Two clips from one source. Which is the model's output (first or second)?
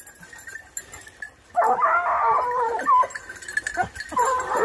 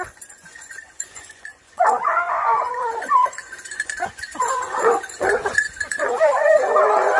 second